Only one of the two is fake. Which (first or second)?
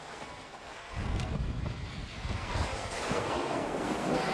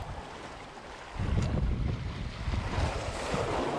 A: first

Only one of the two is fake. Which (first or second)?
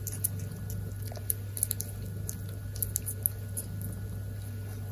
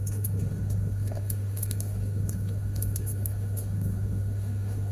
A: second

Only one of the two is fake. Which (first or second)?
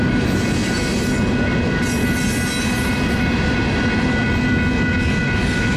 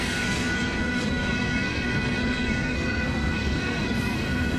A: second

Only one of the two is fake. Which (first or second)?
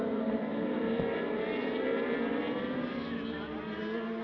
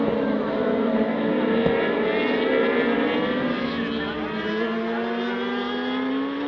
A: first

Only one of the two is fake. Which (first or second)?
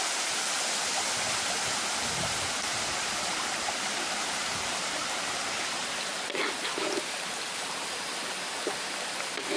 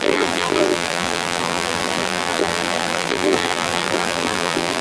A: second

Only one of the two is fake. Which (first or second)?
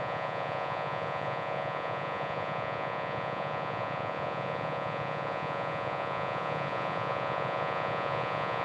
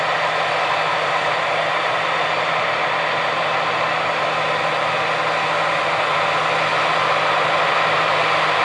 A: first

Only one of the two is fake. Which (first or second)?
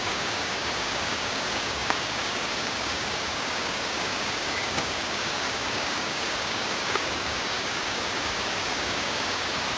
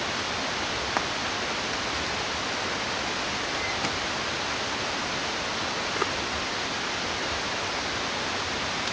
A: first